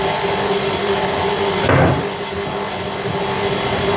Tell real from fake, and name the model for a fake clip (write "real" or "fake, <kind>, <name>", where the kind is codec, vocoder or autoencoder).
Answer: real